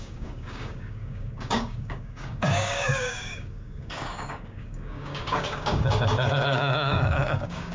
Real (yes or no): no